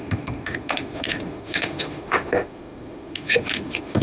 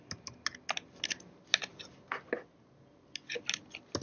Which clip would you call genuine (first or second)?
second